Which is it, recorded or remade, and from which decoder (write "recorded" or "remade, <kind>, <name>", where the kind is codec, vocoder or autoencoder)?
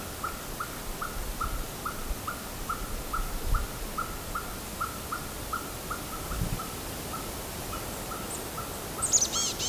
recorded